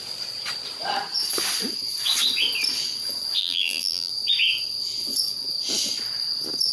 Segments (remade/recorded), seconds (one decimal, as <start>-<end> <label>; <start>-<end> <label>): 0.0-3.4 recorded; 3.4-4.1 remade; 4.1-6.7 recorded